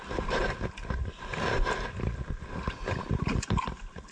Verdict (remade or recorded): recorded